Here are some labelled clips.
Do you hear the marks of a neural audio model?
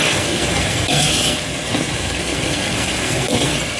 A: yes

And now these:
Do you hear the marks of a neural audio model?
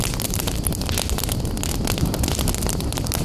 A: no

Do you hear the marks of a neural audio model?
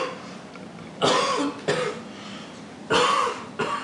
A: no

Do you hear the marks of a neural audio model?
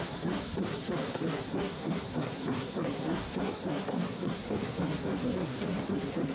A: yes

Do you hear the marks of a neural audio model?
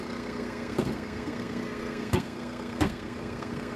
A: yes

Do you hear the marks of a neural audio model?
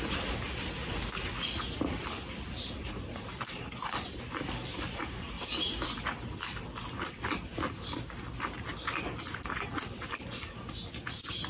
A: no